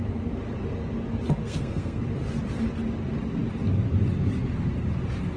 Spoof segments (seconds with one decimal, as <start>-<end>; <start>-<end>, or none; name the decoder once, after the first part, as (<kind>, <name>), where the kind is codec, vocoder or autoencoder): 1.4-2.0 (codec, SNAC)

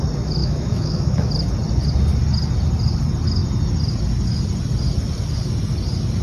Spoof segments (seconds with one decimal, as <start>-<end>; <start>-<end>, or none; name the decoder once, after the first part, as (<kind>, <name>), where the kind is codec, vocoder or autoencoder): 0.4-1.3 (autoencoder, DAC-VAE)

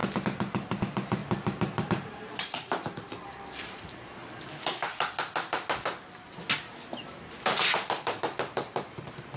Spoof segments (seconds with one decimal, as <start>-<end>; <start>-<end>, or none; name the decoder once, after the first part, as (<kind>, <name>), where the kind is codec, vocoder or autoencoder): 0.7-1.2 (vocoder, BigVGAN v2); 1.8-4.2; 7.3-9.4

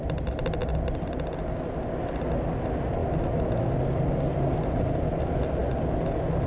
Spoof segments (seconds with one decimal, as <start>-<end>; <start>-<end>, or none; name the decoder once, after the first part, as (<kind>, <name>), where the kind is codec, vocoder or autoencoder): none

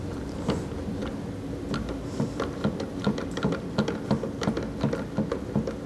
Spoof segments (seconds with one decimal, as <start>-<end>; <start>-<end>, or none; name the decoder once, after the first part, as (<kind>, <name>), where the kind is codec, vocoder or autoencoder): none

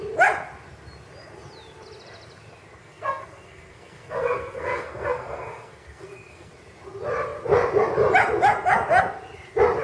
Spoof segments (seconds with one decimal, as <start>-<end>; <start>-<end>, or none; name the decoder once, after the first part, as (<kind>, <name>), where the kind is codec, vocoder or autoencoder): 2.8-6.5 (codec, SNAC)

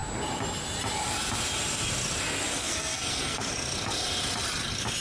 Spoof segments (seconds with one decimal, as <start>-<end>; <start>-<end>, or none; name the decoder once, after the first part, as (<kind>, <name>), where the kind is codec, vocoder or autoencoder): 2.6-3.5 (codec, SNAC)